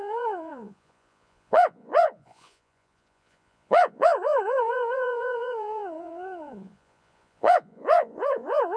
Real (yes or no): no